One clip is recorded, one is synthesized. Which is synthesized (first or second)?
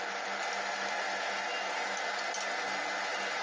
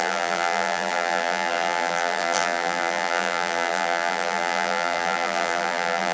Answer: second